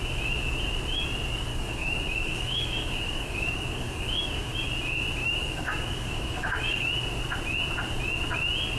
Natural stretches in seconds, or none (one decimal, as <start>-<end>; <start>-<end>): 0.0-1.5; 4.5-5.2; 6.9-8.8